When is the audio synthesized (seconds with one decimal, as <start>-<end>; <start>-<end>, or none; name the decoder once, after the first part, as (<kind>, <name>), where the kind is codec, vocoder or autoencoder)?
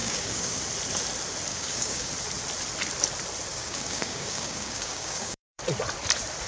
0.0-0.6 (codec, DAC); 1.5-2.1; 3.5-5.6